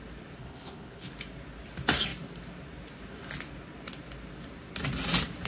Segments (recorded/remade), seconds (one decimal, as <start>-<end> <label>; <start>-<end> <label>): 0.0-0.4 recorded; 0.4-1.1 remade; 1.1-5.5 recorded